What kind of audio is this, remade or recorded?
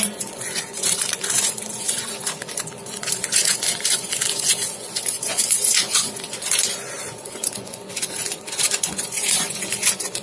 remade